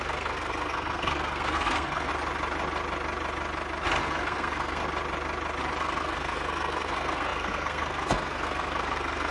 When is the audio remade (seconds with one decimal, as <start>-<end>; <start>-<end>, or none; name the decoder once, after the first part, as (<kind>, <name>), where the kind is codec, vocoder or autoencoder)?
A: 0.0-2.1 (codec, SNAC); 4.0-4.8; 5.8-9.3